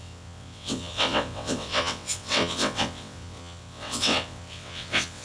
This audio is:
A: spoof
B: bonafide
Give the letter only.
A